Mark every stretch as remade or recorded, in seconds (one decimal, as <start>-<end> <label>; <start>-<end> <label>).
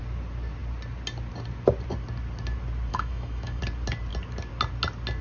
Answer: 0.0-2.9 recorded; 2.9-3.6 remade; 3.6-5.2 recorded